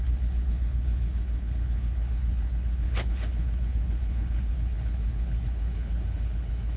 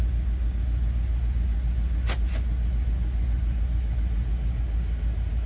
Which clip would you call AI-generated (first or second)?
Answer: first